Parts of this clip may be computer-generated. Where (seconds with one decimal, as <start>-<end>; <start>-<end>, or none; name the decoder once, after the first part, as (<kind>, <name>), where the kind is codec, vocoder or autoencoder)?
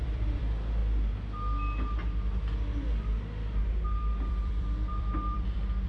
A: 0.0-0.8 (vocoder, BigVGAN v2); 4.3-5.9